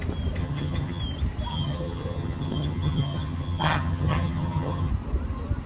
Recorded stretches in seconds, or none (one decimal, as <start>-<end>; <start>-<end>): 0.0-0.4; 1.0-1.5; 4.9-5.7